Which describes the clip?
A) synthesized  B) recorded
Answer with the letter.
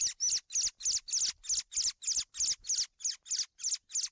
B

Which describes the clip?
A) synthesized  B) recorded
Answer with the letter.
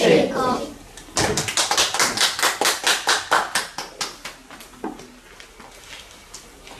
B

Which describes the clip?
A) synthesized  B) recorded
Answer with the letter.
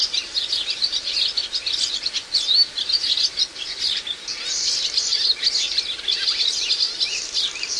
B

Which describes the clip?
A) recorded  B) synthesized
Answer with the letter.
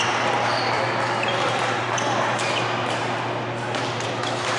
A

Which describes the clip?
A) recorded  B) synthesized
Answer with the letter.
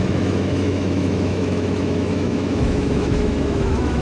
B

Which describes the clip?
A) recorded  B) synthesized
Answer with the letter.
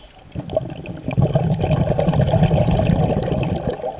A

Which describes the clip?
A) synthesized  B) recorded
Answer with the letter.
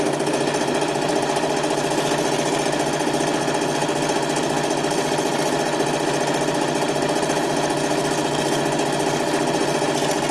B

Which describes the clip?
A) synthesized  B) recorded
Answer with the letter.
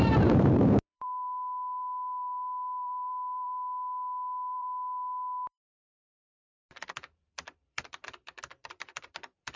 A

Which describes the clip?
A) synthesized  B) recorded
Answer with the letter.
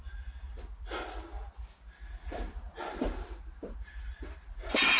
B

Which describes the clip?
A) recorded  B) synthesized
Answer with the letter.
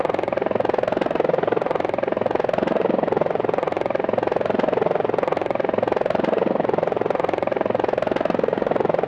B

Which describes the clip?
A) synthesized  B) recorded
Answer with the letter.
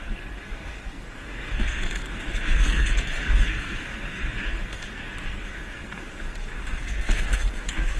A